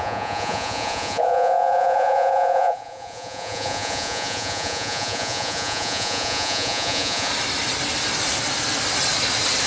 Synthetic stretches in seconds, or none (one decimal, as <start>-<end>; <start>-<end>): 0.0-7.3